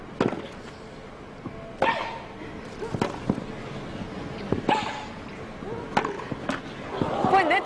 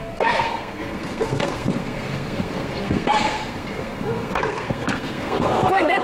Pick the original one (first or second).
first